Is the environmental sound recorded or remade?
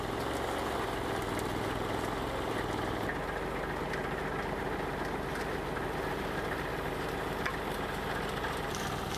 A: recorded